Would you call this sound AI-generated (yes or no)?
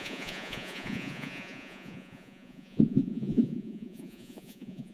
yes